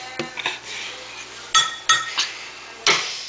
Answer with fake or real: real